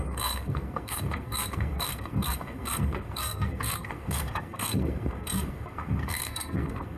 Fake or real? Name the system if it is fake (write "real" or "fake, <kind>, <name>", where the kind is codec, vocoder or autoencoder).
fake, codec, SNAC